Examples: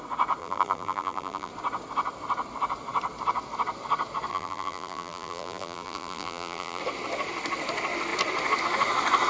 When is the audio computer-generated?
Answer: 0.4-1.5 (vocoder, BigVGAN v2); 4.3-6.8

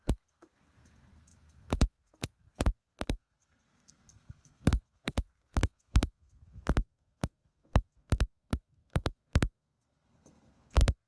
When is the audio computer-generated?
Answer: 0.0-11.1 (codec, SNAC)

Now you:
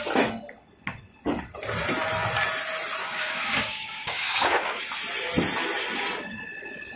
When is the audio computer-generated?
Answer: 3.0-4.8 (codec, DAC)

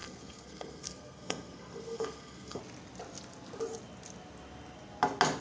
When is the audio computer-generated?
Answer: 0.0-2.6 (codec, SNAC)